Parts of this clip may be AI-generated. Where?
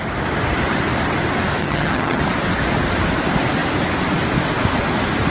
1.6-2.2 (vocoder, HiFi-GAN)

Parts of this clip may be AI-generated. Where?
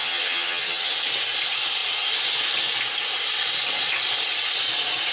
0.0-0.9 (vocoder, HiFi-GAN)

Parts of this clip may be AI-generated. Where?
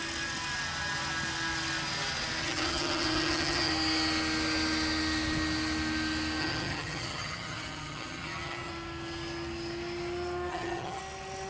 2.4-3.7 (vocoder, HiFi-GAN); 6.4-8.7; 10.5-11.0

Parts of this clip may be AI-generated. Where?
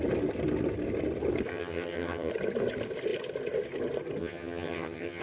1.5-2.3 (vocoder, HiFi-GAN); 4.2-5.2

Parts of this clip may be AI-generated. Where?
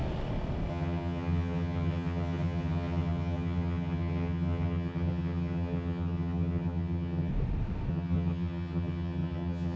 0.7-7.3 (vocoder, HiFi-GAN); 7.9-9.8